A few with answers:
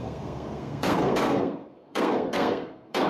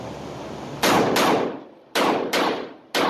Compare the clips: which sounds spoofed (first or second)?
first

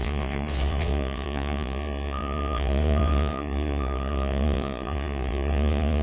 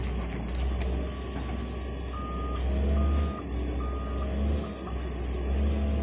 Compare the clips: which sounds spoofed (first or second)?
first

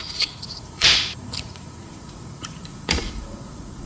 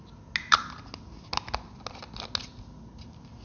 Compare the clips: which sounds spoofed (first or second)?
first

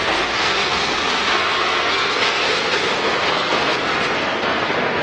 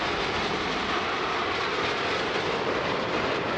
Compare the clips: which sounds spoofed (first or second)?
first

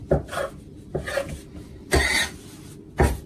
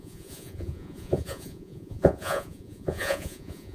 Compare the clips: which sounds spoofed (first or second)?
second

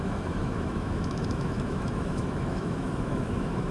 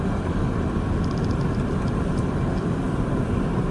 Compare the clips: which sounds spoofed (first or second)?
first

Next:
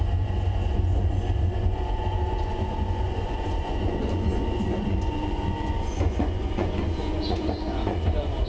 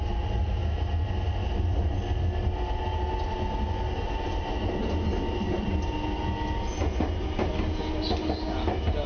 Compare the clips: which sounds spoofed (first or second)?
first